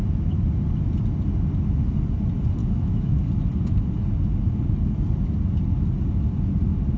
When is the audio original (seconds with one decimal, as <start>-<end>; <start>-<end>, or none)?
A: 0.0-2.6; 3.1-7.0